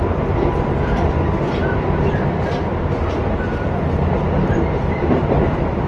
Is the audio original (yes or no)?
no